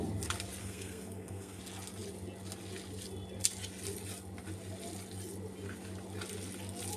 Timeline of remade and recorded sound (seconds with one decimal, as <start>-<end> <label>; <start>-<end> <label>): 0.0-0.6 recorded; 0.6-1.6 remade; 1.6-7.0 recorded

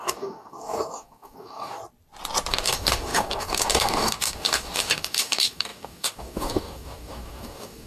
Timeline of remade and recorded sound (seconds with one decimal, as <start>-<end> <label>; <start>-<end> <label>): 0.0-1.8 remade; 1.8-2.5 recorded; 2.5-7.9 remade

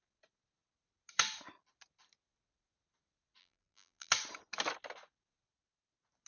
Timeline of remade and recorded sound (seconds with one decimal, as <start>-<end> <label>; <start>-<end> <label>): 0.0-3.4 recorded; 3.4-4.1 remade; 4.1-6.3 recorded

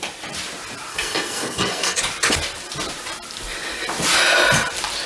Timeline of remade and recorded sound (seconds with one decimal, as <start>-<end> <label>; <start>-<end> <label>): 0.0-0.9 recorded; 0.9-2.0 remade; 2.0-5.1 recorded